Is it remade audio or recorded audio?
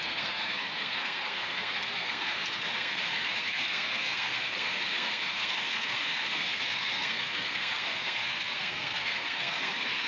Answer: remade